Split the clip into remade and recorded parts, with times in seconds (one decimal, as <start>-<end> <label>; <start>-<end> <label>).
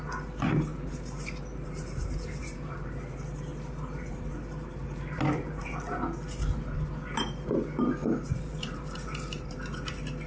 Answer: 0.0-0.7 recorded; 0.7-3.0 remade; 3.0-4.7 recorded; 4.7-5.6 remade; 5.6-8.0 recorded; 8.0-9.9 remade; 9.9-10.3 recorded